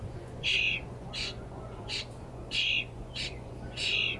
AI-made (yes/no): yes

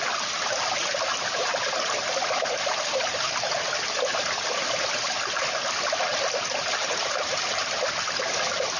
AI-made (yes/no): no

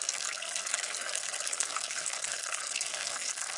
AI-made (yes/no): yes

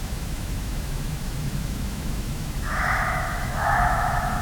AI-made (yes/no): yes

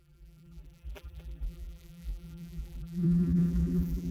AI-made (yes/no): yes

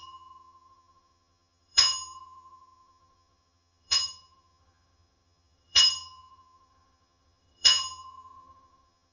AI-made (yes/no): yes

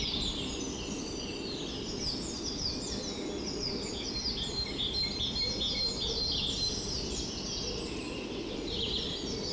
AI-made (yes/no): no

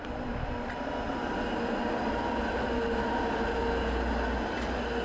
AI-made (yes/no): no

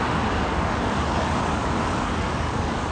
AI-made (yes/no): yes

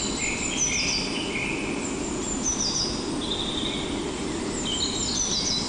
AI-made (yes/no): no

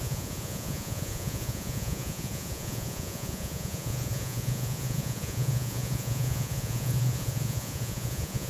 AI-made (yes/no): yes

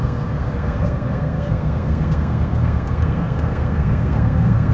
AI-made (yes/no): yes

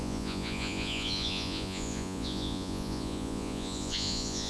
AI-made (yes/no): yes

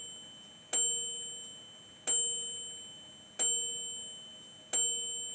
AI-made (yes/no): no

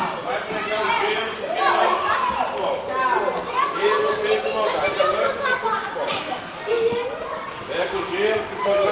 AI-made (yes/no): no